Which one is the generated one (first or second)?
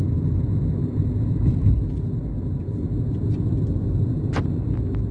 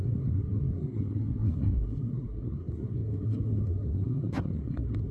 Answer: second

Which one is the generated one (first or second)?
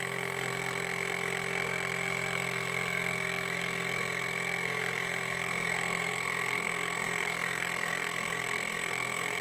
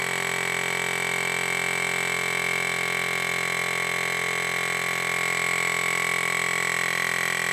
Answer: first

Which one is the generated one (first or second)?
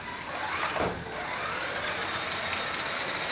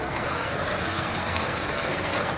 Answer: second